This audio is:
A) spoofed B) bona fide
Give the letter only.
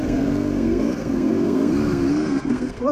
A